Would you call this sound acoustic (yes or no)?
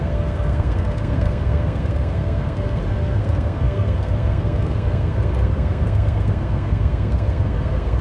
no